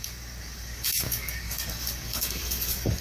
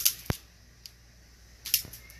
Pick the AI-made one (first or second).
first